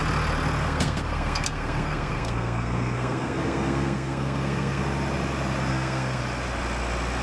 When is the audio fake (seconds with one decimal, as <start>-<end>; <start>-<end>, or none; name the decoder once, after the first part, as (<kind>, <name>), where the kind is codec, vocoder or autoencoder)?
0.6-4.8 (codec, SNAC); 5.7-6.2